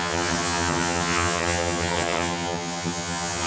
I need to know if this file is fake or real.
fake